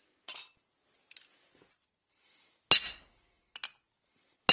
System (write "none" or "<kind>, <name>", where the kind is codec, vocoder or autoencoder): none